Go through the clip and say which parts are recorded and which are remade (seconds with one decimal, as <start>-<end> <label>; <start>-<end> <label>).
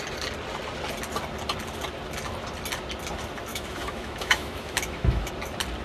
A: 0.0-3.5 recorded; 3.5-5.3 remade; 5.3-5.8 recorded